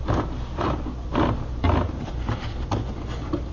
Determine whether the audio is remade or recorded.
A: remade